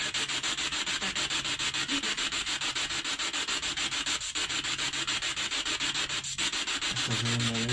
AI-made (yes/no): no